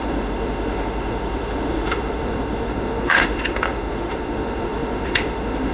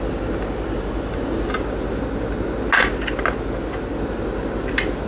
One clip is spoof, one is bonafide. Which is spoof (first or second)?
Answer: first